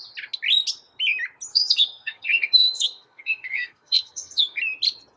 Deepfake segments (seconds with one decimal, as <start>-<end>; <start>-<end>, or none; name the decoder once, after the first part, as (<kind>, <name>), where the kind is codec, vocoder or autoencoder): 1.5-4.6 (codec, SNAC)